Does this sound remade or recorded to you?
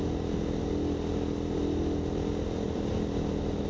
recorded